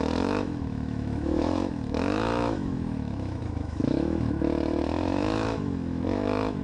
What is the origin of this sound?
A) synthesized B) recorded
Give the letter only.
A